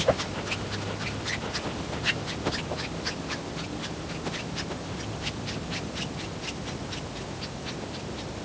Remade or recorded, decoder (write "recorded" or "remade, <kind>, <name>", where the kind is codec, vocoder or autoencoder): recorded